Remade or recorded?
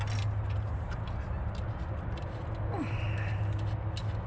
recorded